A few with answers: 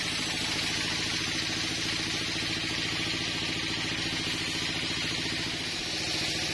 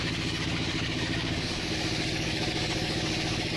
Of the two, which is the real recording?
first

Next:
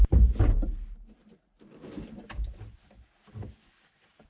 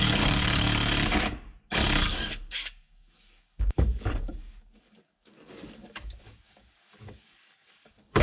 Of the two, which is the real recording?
first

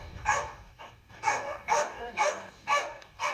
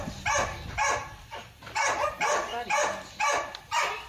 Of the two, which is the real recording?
second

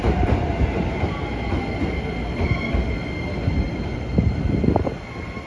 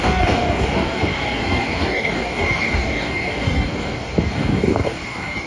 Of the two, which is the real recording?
first